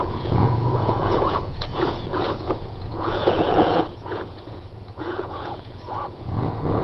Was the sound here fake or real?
fake